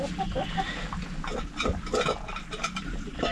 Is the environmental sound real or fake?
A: real